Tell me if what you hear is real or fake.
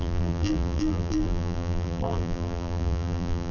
fake